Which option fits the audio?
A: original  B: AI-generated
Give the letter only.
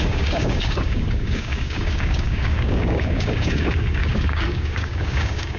B